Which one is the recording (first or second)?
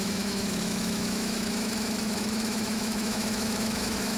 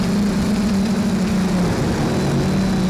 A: second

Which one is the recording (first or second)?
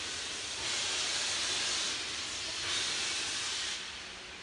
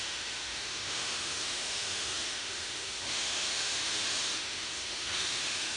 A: first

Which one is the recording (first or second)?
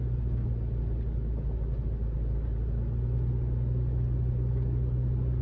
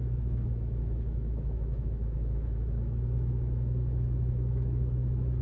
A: first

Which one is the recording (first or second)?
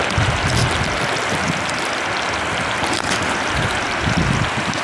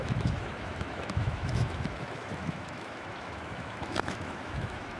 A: first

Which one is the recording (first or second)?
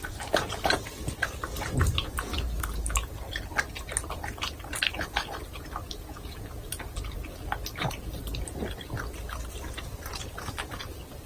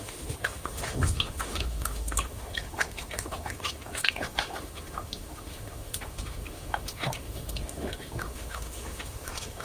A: first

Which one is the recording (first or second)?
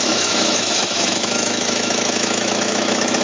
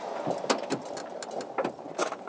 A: second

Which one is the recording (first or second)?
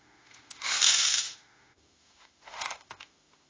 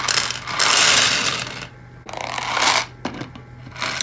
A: second